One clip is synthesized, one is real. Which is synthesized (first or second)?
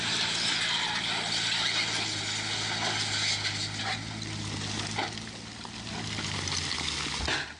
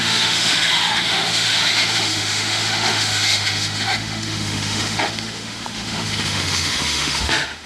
second